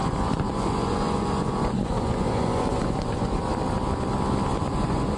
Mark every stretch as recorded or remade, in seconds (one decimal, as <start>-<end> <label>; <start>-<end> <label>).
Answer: 0.0-3.5 remade; 3.5-4.6 recorded; 4.6-5.2 remade